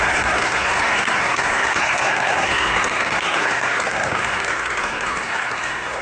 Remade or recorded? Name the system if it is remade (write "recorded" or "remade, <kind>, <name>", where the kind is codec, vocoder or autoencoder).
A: remade, codec, SNAC